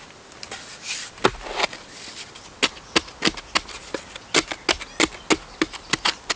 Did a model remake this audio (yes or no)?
no